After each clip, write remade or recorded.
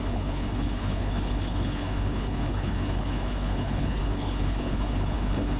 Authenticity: remade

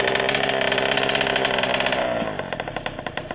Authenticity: recorded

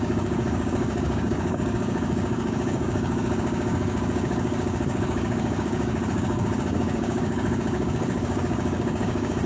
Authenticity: remade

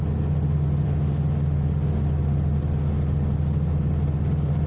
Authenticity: recorded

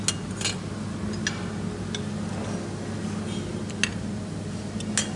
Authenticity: recorded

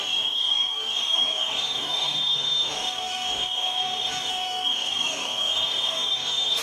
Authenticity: remade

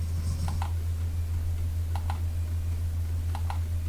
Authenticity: recorded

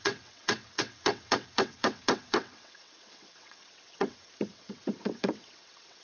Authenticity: remade